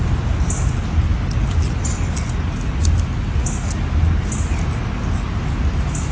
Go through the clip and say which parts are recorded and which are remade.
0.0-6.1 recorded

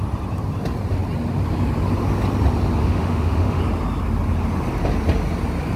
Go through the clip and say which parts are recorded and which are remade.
0.0-2.8 recorded; 2.8-3.6 remade; 3.6-5.8 recorded

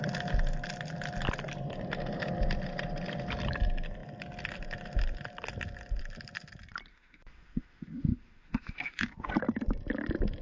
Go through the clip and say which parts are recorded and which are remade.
0.0-6.9 recorded; 6.9-9.3 remade; 9.3-10.4 recorded

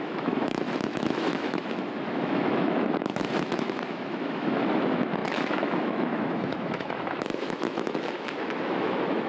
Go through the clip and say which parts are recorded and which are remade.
0.0-9.3 remade